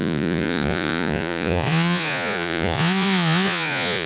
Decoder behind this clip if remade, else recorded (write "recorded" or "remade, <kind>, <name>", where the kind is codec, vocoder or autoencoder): remade, vocoder, Vocos